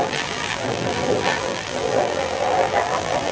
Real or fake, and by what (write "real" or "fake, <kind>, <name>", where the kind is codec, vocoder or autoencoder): fake, vocoder, BigVGAN v2